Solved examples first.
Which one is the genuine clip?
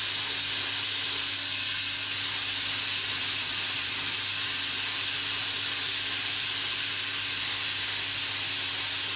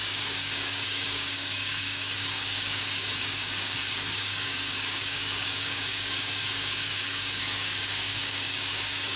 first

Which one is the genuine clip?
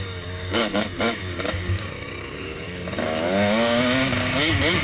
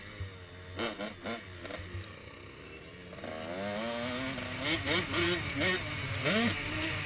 second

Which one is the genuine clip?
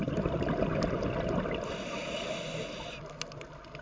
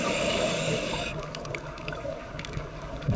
first